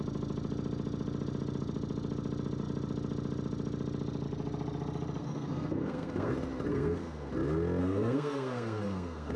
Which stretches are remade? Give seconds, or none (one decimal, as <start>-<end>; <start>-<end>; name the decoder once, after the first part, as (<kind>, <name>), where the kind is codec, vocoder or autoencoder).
5.2-6.3 (codec, SNAC); 6.7-7.3; 7.8-9.4